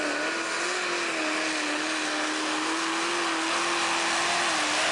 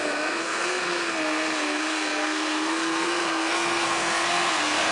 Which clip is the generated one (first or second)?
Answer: second